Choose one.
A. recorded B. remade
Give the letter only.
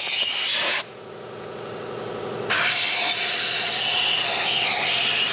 A